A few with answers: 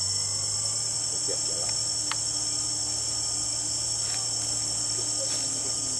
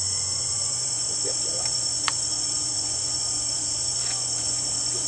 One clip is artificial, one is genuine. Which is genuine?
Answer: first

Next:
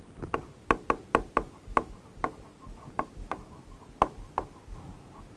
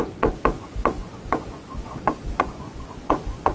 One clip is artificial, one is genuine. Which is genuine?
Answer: first